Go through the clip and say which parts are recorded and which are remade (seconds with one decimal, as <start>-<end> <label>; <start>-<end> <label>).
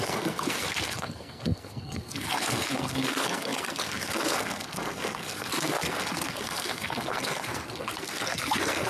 0.0-8.9 remade